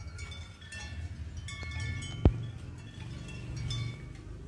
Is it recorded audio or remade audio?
recorded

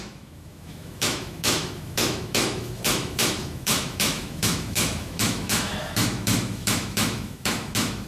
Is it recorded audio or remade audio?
remade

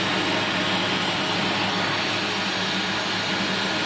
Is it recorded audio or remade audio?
recorded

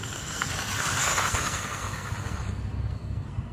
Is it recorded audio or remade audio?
remade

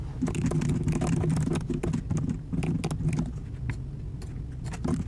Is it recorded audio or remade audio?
recorded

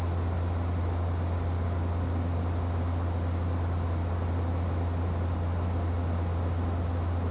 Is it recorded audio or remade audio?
recorded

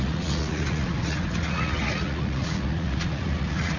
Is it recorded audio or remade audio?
remade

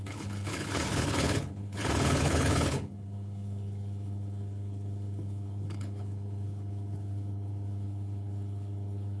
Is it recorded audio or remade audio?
remade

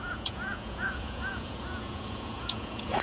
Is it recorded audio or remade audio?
remade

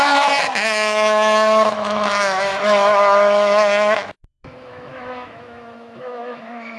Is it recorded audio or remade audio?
remade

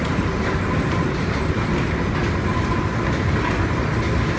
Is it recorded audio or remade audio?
recorded